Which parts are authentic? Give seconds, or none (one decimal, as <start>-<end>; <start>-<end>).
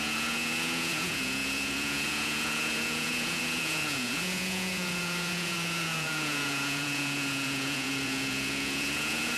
none